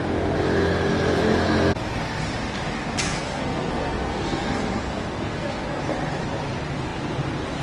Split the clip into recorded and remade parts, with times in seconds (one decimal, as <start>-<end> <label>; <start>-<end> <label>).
0.0-3.0 recorded; 3.0-5.8 remade; 5.8-7.6 recorded